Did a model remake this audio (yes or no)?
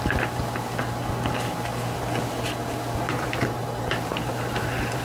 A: no